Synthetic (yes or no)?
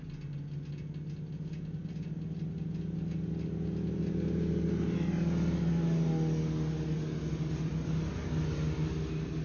no